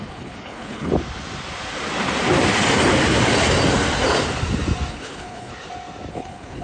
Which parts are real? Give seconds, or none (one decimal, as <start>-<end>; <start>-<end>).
0.9-4.9; 5.5-6.1